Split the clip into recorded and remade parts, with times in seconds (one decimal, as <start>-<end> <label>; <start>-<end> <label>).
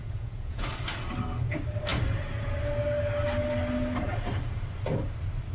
0.0-0.7 remade; 0.7-5.5 recorded